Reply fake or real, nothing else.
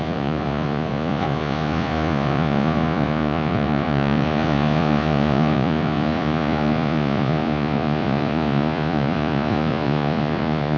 fake